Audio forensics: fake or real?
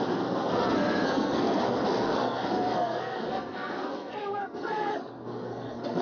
fake